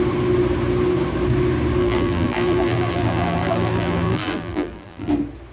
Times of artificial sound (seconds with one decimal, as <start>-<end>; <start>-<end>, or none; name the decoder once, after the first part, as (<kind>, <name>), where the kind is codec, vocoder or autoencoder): 1.8-5.1 (vocoder, BigVGAN v2)